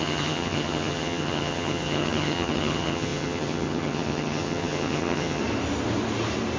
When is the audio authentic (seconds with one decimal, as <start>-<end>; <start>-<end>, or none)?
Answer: 5.4-6.6